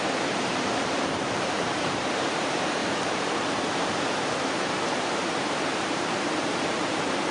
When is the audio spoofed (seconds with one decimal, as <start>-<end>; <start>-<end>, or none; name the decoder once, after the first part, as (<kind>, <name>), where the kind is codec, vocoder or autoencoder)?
0.0-2.8 (vocoder, BigVGAN v2); 3.8-7.3